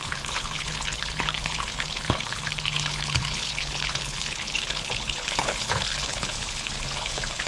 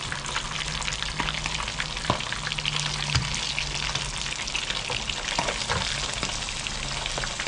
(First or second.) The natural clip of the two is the second